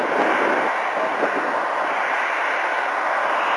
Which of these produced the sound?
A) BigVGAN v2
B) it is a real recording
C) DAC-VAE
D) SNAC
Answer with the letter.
B